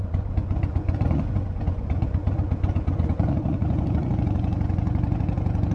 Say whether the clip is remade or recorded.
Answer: remade